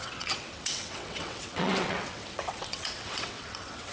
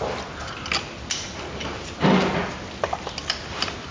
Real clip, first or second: second